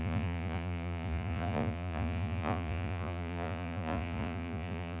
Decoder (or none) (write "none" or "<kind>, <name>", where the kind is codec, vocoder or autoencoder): vocoder, Vocos